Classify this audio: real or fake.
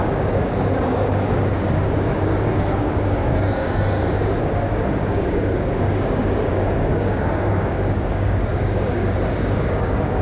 fake